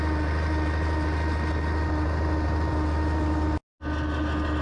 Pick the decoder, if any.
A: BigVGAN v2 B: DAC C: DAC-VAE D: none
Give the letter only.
D